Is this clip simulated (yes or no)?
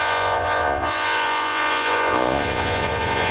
yes